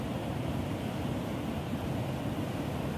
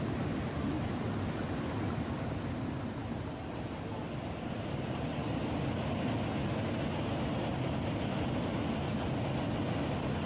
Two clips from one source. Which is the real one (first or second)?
second